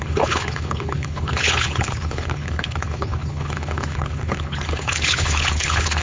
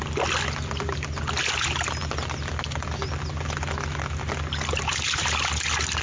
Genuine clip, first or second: second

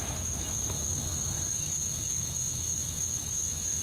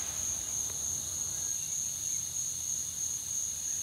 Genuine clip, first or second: second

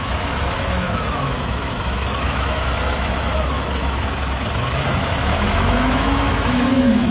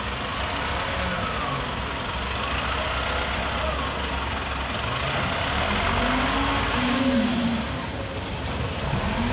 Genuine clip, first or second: second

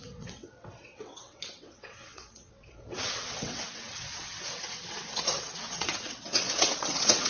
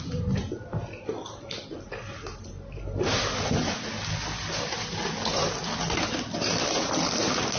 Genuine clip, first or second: second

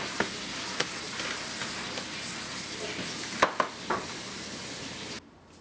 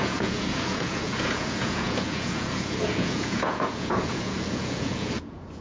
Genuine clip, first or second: first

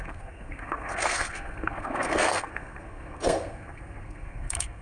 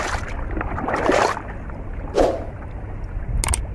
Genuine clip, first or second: second